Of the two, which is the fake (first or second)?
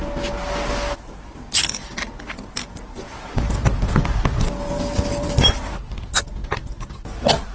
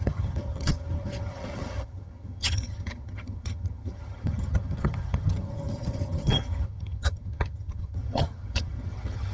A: second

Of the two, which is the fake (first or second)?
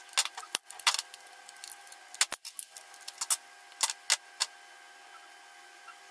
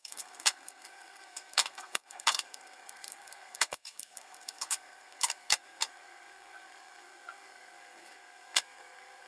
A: second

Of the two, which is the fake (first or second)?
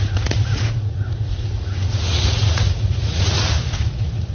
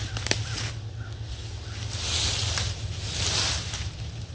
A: first